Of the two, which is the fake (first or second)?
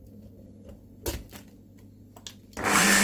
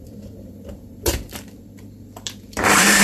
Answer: second